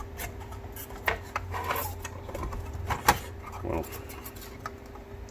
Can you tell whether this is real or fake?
real